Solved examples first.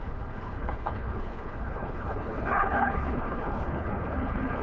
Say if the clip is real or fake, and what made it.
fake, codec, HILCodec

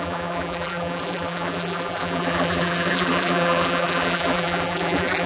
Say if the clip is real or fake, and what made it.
fake, vocoder, BigVGAN v2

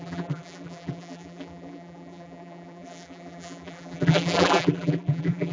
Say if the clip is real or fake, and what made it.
fake, vocoder, BigVGAN v2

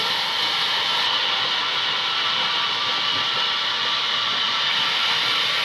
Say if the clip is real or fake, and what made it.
real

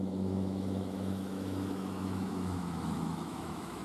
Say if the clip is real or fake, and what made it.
fake, autoencoder, DAC-VAE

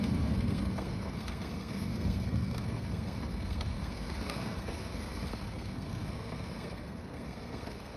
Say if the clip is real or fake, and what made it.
fake, codec, SNAC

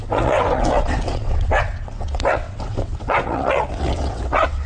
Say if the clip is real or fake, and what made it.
fake, vocoder, WaveNeXt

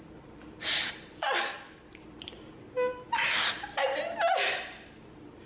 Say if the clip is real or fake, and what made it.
fake, vocoder, BigVGAN v2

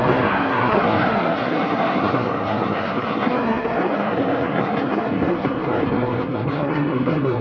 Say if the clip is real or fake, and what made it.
fake, codec, SNAC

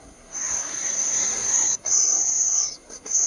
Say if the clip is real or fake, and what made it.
fake, codec, SNAC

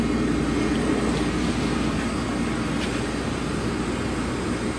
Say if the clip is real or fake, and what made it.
real